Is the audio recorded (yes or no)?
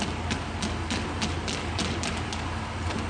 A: yes